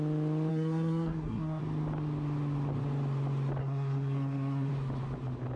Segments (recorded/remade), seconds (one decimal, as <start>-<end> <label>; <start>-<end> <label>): 0.0-0.5 recorded; 0.5-1.6 remade; 1.6-3.6 recorded; 3.6-4.7 remade; 4.7-5.6 recorded